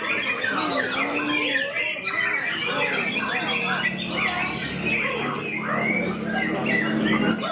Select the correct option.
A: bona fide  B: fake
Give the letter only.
A